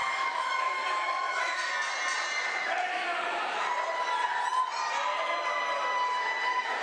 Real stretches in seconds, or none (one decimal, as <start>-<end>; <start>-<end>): 1.7-6.8